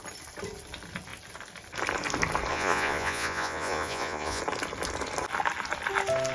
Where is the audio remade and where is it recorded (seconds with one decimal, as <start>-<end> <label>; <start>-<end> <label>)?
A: 0.0-2.5 recorded; 2.5-4.4 remade; 4.4-6.3 recorded